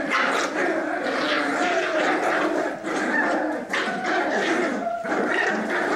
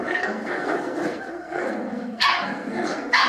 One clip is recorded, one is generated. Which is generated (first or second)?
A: second